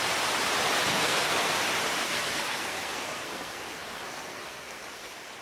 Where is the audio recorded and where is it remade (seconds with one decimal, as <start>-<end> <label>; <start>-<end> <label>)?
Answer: 0.0-0.9 recorded; 0.9-1.6 remade; 1.6-2.0 recorded; 2.0-5.4 remade